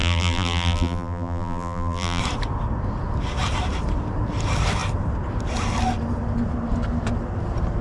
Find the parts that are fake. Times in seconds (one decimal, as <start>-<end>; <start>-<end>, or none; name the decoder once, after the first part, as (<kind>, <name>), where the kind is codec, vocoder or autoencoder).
0.0-2.2 (vocoder, BigVGAN v2)